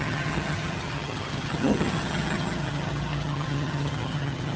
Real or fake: fake